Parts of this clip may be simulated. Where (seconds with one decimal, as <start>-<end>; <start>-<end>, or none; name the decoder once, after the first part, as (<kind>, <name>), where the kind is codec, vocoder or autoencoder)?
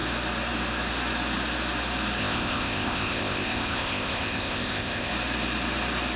2.2-5.1 (codec, ZipCodec)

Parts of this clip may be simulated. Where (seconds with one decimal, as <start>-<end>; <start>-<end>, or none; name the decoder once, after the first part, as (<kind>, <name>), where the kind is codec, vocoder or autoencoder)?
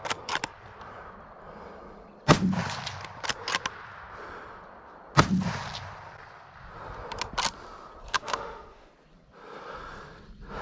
8.1-8.9 (autoencoder, DAC-VAE)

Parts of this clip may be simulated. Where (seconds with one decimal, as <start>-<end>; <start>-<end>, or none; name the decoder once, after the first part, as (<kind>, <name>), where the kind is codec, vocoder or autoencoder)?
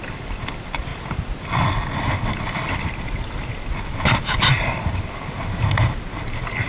none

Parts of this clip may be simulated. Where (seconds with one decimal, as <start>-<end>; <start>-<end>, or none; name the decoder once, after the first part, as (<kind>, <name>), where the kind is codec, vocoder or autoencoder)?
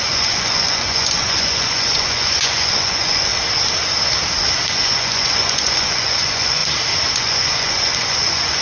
0.0-3.3 (vocoder, Vocos); 4.6-6.6; 7.2-8.6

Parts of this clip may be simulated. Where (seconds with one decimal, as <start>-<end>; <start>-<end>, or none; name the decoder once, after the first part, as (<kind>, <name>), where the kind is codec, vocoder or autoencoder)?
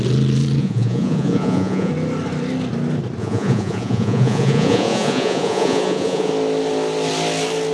0.6-1.9 (vocoder, Vocos); 3.2-6.3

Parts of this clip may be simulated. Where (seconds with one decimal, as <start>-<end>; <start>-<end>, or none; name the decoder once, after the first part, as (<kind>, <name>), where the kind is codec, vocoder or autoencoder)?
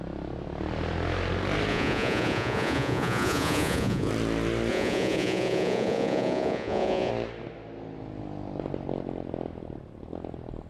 1.7-4.1 (vocoder, Vocos); 4.7-7.1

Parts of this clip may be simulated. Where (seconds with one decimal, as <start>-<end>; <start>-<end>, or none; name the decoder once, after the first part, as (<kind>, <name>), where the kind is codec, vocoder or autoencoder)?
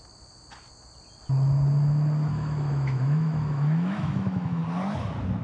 2.3-4.6 (autoencoder, DAC-VAE)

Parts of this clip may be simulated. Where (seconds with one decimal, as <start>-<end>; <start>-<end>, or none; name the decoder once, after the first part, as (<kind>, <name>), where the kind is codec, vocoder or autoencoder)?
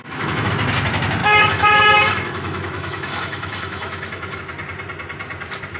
0.0-0.5 (autoencoder, DAC-VAE); 1.2-4.4